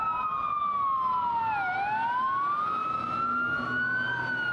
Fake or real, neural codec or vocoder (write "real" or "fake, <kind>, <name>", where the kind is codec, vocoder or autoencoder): real